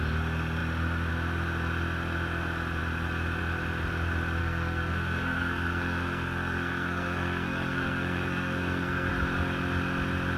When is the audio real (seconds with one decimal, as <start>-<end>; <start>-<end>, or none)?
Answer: 0.0-4.4; 9.1-10.4